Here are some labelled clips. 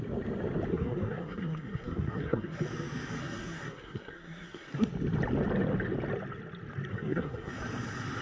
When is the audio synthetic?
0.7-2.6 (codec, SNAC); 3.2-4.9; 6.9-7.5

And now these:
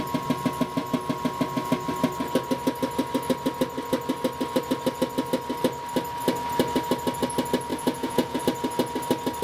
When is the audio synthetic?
7.7-8.4 (vocoder, Vocos)

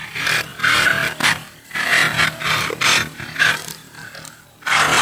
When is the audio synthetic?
0.0-0.5 (vocoder, BigVGAN v2); 1.3-1.9; 2.7-5.0

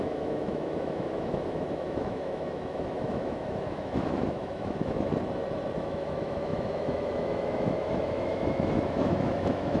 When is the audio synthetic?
0.0-5.1 (autoencoder, DAC-VAE); 5.8-9.8

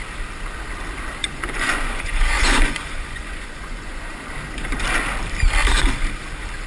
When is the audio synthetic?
1.2-4.3 (vocoder, Vocos)

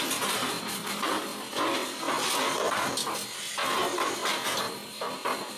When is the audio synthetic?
0.0-1.2 (vocoder, BigVGAN v2); 4.6-5.6

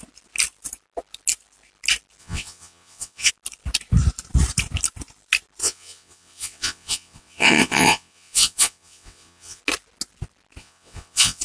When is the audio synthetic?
2.2-3.3 (vocoder, WaveNeXt); 5.6-9.6; 10.6-11.4

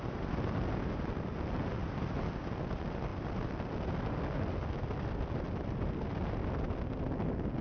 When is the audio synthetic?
none